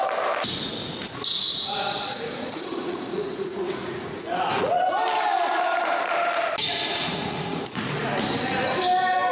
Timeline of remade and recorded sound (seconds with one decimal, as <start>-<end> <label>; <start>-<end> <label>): 0.0-1.0 recorded; 1.0-4.8 remade; 4.8-7.0 recorded; 7.0-8.0 remade; 8.0-9.3 recorded